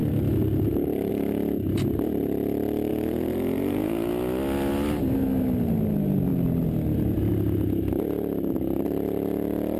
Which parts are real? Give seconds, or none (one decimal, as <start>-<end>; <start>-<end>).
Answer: 0.0-2.9; 4.1-9.8